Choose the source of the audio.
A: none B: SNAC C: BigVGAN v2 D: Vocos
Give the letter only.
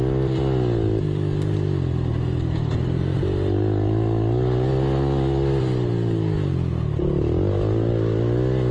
A